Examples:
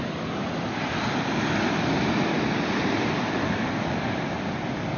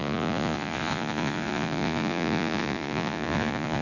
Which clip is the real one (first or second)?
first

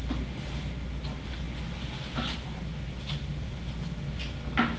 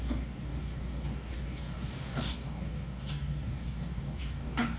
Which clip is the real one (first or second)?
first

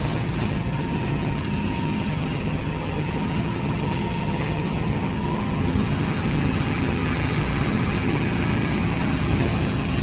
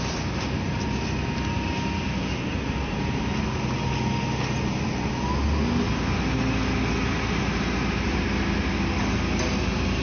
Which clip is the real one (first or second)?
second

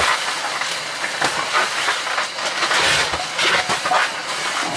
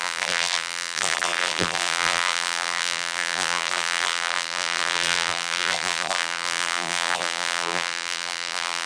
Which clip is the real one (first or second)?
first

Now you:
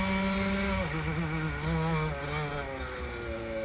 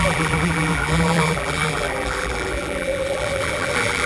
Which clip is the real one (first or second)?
first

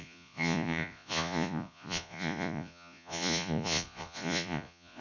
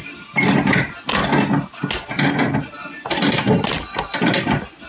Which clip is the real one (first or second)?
second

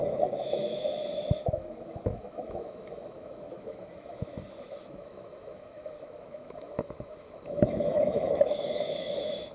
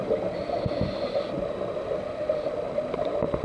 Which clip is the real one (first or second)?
second